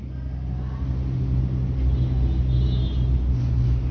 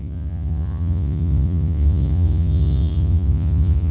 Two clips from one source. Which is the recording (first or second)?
first